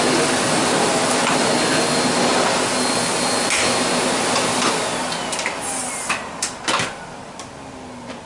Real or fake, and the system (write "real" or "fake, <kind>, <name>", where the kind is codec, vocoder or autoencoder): real